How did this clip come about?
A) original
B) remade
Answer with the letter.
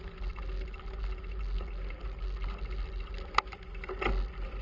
A